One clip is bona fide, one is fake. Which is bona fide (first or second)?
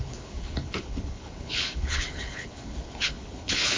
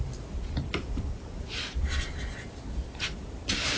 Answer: second